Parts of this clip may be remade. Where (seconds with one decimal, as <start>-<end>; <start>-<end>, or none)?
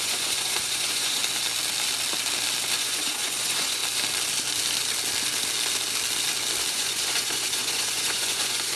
0.0-1.2; 2.8-3.8; 6.7-8.8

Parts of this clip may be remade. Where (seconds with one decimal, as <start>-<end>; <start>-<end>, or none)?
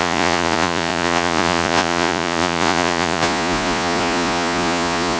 0.0-5.2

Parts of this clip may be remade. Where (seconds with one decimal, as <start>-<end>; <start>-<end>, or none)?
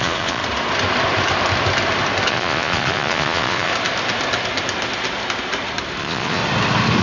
0.0-0.4; 2.3-3.7; 6.0-6.4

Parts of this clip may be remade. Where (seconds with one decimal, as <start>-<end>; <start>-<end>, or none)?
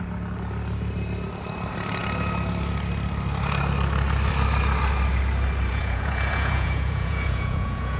5.7-8.0